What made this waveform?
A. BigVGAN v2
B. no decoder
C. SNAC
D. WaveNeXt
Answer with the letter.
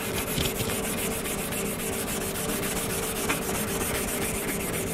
A